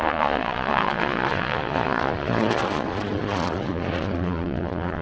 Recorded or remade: remade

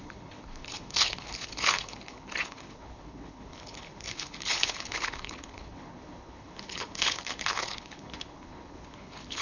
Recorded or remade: remade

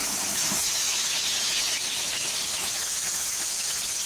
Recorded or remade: remade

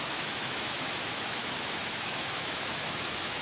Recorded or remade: remade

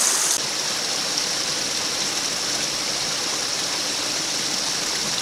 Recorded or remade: recorded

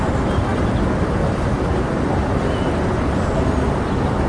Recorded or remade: recorded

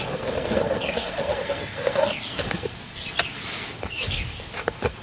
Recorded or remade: remade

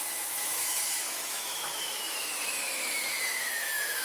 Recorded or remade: remade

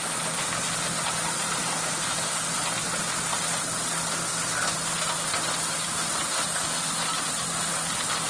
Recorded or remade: recorded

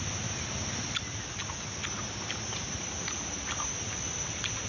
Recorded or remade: recorded